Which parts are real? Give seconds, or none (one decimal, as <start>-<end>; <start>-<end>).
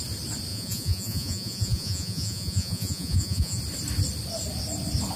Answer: 0.0-0.5; 3.6-5.2